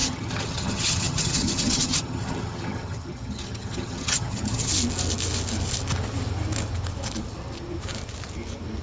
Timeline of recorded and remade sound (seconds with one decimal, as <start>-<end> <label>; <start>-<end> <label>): 0.0-4.7 remade; 4.7-8.8 recorded